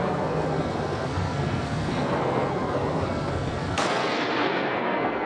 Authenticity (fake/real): fake